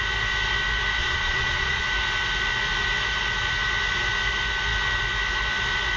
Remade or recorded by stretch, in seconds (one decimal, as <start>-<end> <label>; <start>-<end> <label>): 0.0-1.0 recorded; 1.0-1.8 remade; 1.8-6.0 recorded

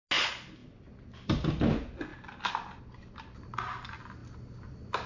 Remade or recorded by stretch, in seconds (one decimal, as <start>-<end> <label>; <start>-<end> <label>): 0.0-0.6 recorded; 0.6-1.5 remade; 1.5-4.2 recorded; 4.2-5.1 remade

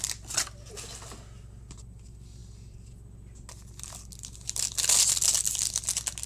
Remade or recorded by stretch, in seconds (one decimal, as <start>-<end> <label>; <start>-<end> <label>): 0.0-6.3 recorded

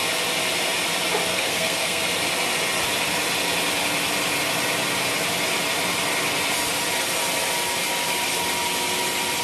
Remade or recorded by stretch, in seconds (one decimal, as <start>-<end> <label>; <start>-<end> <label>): 0.0-1.3 recorded; 1.3-2.0 remade; 2.0-9.4 recorded

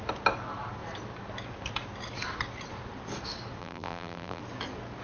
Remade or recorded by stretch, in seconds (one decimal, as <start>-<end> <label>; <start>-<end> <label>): 0.0-3.6 recorded; 3.6-4.4 remade; 4.4-5.0 recorded

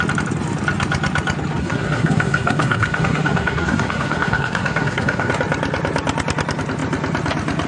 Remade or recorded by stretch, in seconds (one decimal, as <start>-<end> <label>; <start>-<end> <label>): 0.0-1.6 recorded; 1.6-5.3 remade; 5.3-7.7 recorded

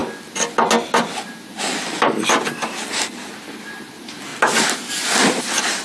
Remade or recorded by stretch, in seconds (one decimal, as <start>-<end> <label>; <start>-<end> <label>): 0.0-5.8 recorded